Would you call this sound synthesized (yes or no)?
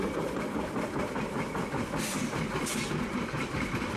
no